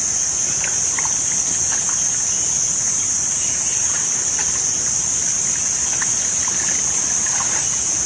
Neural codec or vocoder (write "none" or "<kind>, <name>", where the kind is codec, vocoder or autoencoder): none